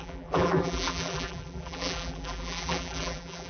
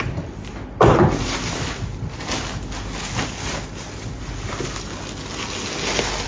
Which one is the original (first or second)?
second